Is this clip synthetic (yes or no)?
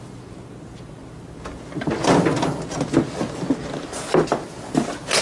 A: no